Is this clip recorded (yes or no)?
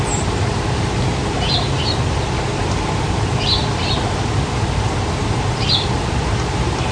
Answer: yes